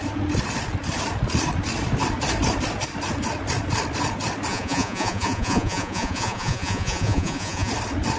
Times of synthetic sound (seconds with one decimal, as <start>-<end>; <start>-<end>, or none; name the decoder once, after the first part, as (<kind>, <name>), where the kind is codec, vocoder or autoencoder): 4.5-7.7 (vocoder, Vocos)